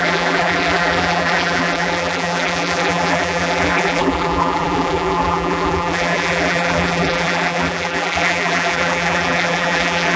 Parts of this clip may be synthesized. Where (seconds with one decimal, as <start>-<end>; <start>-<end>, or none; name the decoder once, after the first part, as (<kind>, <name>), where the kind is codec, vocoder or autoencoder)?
0.0-10.2 (vocoder, BigVGAN v2)